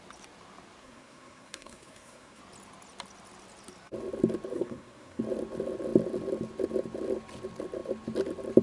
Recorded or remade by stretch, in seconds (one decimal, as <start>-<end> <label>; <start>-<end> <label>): 0.0-0.8 recorded; 0.8-2.4 remade; 2.4-4.5 recorded; 4.5-5.2 remade; 5.2-8.6 recorded